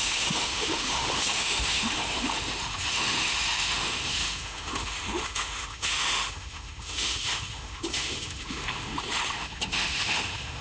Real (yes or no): no